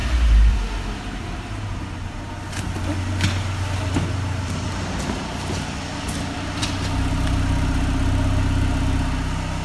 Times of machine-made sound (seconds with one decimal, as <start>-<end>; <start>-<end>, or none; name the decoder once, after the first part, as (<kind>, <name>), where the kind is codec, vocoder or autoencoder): 0.0-2.3 (vocoder, BigVGAN v2)